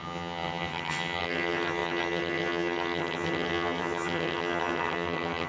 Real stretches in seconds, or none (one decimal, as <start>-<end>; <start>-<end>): none